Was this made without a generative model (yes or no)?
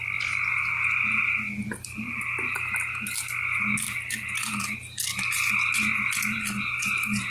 yes